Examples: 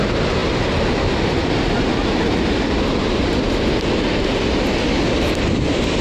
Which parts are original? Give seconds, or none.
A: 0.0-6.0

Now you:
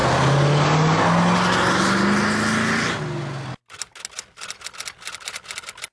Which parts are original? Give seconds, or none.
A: 0.0-5.9

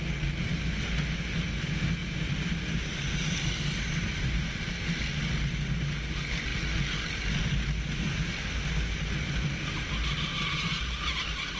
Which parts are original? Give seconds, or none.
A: 0.0-2.0; 5.1-10.3

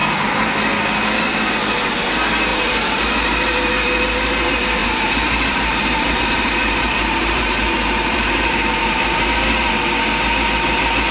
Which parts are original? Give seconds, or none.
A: 0.0-2.5; 3.1-4.8; 9.7-11.1

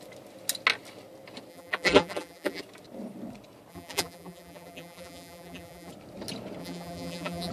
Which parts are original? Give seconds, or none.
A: 0.0-1.5; 2.6-3.7; 5.9-6.6

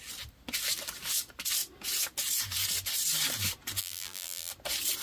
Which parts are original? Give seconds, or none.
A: 0.0-3.8; 4.5-5.0

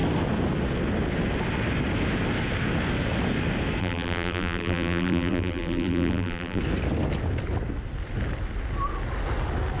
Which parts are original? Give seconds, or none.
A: 0.0-3.8; 6.6-9.8

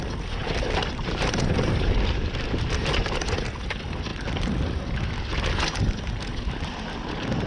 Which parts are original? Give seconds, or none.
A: 0.0-0.4; 3.0-7.5